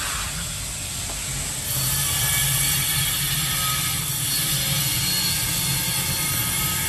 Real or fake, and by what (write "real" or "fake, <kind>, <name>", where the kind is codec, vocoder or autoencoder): real